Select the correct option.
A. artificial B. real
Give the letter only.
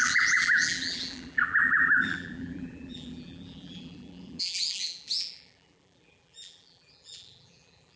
A